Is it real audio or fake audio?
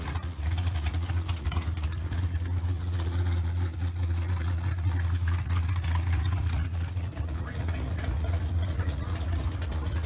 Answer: fake